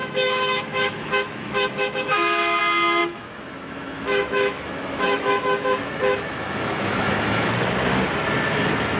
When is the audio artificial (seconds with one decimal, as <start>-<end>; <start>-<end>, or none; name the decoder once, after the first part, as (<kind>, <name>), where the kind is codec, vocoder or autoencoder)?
0.0-2.6 (autoencoder, DAC-VAE); 3.0-7.5